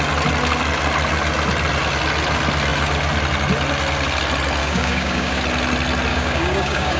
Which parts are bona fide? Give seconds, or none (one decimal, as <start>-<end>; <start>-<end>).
0.0-4.6; 5.4-6.1